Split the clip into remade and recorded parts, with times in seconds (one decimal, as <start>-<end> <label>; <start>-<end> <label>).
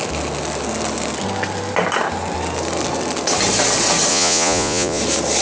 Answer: 0.0-4.1 recorded; 4.1-5.0 remade; 5.0-5.4 recorded